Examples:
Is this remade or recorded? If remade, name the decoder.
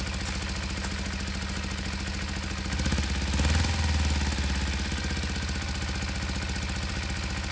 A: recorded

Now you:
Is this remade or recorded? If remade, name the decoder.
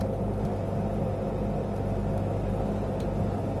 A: recorded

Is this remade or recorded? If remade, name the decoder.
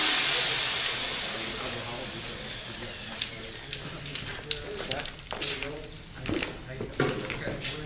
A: recorded